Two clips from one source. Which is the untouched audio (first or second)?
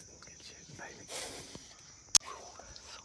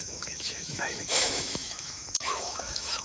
first